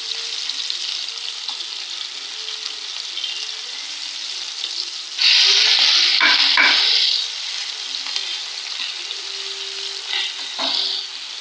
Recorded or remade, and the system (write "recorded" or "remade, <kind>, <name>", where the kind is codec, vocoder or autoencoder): recorded